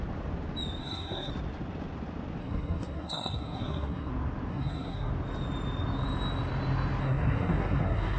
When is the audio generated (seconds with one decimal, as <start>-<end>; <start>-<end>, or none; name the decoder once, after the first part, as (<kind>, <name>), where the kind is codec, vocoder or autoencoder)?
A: 0.8-1.3 (codec, SNAC); 2.4-4.1; 4.5-5.1; 7.0-8.2